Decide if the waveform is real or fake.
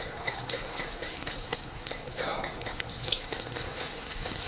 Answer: fake